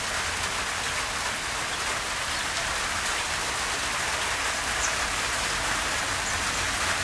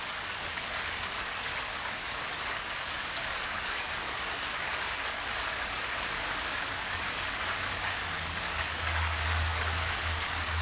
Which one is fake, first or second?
second